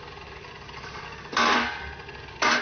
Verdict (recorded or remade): recorded